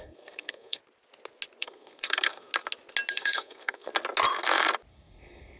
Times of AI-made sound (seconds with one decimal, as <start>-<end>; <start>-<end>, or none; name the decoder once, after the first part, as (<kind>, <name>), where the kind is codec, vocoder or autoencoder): 0.0-0.8 (codec, SNAC); 1.6-2.5; 3.1-3.9; 4.9-5.6